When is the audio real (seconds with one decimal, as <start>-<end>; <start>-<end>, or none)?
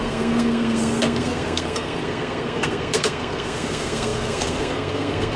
none